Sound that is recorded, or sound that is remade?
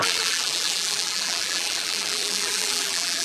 remade